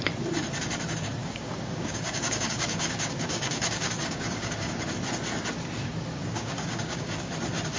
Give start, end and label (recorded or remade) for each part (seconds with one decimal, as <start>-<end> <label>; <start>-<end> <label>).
0.0-1.2 recorded; 1.2-4.7 remade; 4.7-6.2 recorded; 6.2-7.3 remade; 7.3-7.8 recorded